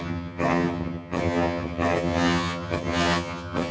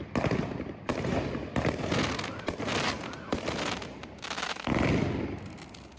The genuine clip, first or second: second